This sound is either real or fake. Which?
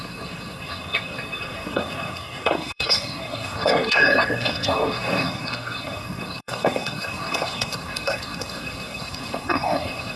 fake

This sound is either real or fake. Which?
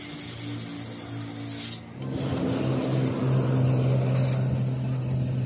real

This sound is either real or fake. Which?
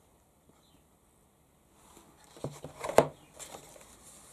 real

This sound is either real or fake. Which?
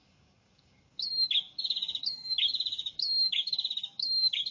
fake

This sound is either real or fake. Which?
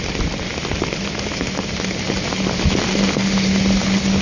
real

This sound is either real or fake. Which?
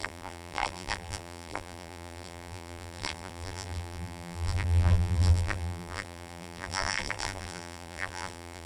fake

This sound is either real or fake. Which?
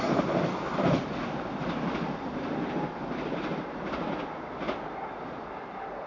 real